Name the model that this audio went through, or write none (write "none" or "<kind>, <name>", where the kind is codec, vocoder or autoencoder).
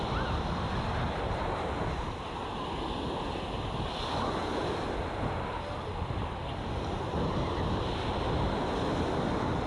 none